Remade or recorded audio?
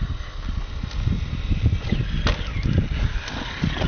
recorded